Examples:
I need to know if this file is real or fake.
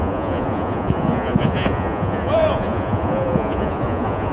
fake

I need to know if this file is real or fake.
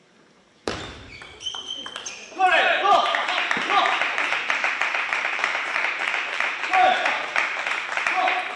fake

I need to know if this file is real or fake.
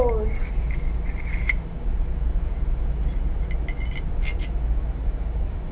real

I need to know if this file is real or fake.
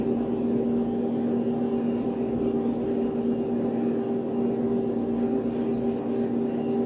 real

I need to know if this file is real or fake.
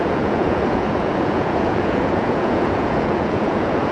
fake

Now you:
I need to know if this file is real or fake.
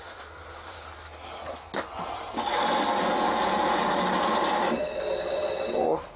real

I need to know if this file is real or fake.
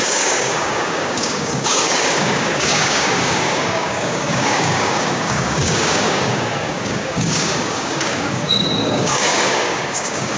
fake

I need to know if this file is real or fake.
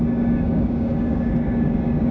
fake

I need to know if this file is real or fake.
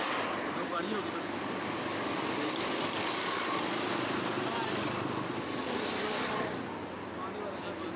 real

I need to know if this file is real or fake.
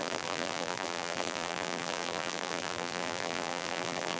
fake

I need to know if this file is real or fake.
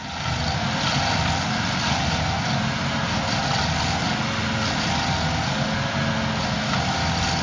real